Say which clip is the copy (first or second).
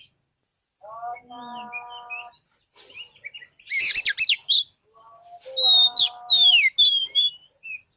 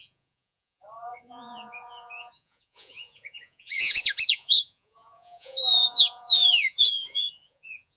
second